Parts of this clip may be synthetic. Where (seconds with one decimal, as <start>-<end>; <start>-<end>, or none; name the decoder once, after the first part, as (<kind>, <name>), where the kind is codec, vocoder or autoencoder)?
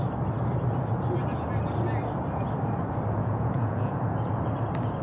3.2-4.0 (vocoder, Vocos)